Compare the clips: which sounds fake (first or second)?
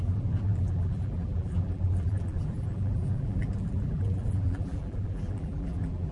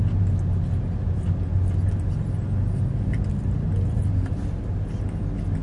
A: first